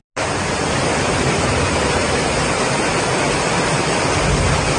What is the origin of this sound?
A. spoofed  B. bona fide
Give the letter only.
B